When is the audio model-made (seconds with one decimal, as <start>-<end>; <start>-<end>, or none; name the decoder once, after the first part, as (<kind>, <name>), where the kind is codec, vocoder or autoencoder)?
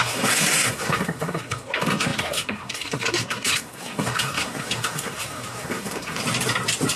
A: 0.0-6.2 (codec, SNAC)